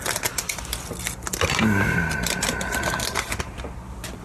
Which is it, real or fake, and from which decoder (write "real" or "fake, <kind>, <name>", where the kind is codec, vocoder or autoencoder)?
real